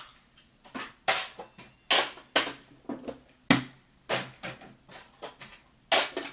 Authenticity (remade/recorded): recorded